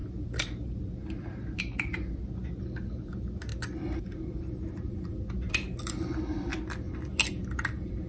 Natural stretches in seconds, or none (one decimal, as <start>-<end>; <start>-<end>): 0.0-8.1